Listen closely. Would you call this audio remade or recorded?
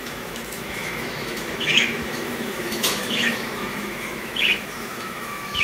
remade